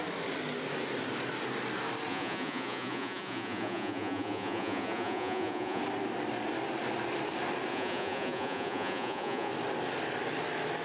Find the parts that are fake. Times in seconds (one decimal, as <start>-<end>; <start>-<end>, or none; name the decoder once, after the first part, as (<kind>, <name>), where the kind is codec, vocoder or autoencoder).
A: 2.1-5.8 (vocoder, Vocos); 7.7-9.5